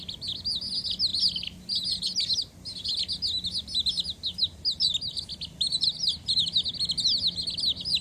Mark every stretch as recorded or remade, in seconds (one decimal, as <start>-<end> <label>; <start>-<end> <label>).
0.0-8.0 recorded